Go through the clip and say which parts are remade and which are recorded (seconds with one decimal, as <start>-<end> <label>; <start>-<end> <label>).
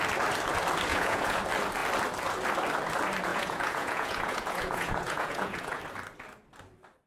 0.0-0.9 recorded; 0.9-1.4 remade; 1.4-3.3 recorded; 3.3-5.8 remade; 5.8-7.1 recorded